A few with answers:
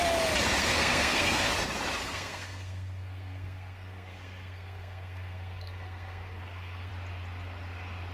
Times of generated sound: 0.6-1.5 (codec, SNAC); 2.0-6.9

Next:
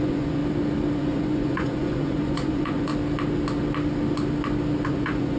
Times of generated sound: 0.0-0.4 (vocoder, Vocos); 1.0-2.9; 4.9-5.4